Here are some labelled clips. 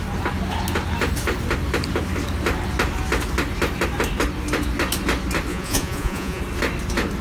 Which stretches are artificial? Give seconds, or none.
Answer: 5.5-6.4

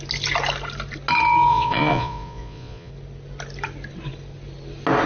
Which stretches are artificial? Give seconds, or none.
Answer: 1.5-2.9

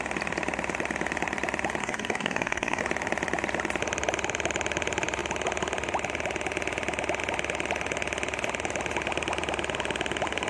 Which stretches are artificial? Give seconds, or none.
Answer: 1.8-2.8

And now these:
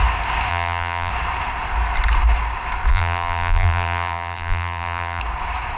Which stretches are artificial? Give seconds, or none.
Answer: 0.5-1.1; 2.9-5.2

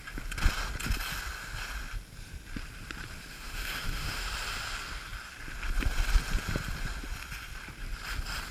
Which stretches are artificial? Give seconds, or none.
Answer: 3.3-4.2

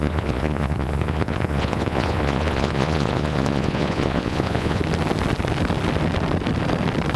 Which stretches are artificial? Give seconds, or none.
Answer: 0.0-4.8